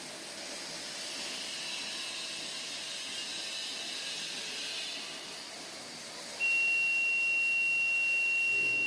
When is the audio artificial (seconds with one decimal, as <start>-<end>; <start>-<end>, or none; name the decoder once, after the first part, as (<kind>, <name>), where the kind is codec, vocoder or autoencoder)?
none